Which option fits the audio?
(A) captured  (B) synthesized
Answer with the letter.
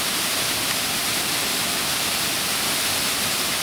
B